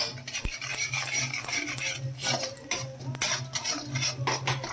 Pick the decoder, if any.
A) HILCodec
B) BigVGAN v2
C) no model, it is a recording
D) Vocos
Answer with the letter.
C